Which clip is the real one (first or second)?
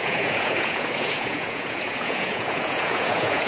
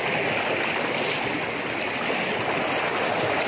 second